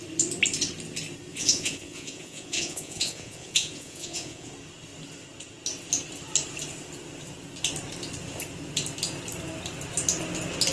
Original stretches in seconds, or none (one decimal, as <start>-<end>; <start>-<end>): 0.0-1.3; 4.5-10.7